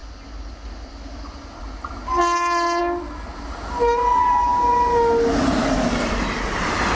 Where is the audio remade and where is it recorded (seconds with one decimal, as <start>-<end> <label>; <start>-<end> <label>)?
0.0-7.0 recorded